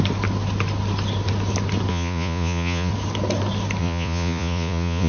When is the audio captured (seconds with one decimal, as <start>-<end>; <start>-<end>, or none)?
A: 0.0-1.9; 2.9-3.8